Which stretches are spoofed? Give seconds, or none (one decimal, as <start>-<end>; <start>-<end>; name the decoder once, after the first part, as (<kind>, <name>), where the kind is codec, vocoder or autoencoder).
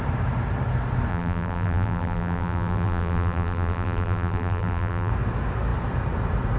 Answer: 1.1-5.1 (vocoder, BigVGAN v2)